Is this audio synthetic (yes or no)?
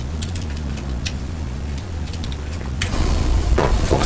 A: yes